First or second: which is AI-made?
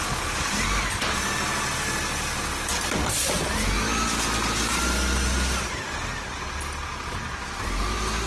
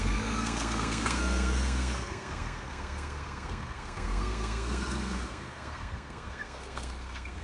second